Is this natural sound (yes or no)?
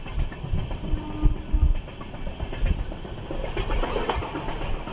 yes